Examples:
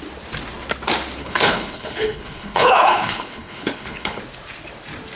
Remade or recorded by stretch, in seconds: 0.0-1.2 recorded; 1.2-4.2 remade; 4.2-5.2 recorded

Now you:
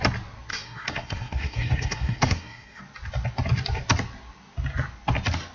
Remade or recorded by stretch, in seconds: 0.0-0.5 recorded; 0.5-2.8 remade; 2.8-5.5 recorded

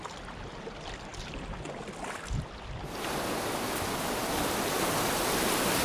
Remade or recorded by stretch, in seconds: 0.0-5.8 recorded

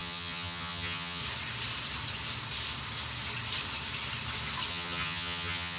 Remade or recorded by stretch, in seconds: 0.0-1.2 remade; 1.2-4.7 recorded; 4.7-5.8 remade

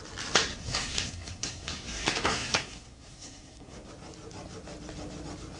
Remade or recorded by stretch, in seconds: 0.0-0.5 recorded; 0.5-3.9 remade; 3.9-5.6 recorded

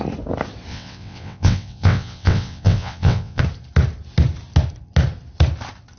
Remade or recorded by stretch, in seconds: 0.0-0.7 recorded; 0.7-3.4 remade; 3.4-6.0 recorded

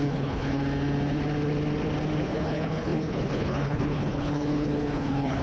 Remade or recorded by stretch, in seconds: 0.0-0.6 remade; 0.6-2.2 recorded; 2.2-5.4 remade